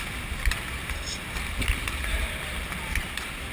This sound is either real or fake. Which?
real